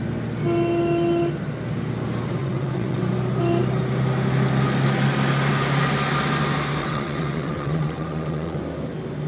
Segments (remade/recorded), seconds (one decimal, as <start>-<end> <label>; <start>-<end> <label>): 0.0-2.4 recorded; 2.4-3.0 remade; 3.0-6.8 recorded; 6.8-8.6 remade; 8.6-9.3 recorded